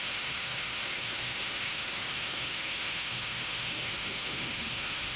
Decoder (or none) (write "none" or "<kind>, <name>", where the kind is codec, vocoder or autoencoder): autoencoder, DAC-VAE